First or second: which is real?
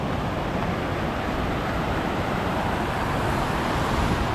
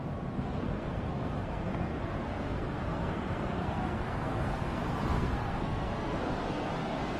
first